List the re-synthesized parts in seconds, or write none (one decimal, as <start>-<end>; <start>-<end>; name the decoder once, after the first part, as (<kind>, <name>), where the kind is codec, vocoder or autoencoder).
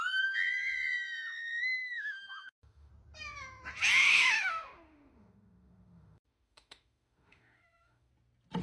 1.8-2.9 (autoencoder, DAC-VAE); 4.0-8.1